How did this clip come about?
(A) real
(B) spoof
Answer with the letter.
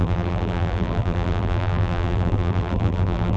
B